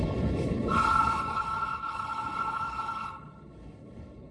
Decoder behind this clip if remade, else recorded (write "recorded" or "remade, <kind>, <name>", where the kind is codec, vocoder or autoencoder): remade, codec, HILCodec